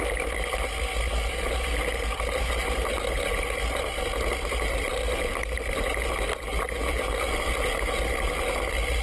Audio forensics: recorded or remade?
recorded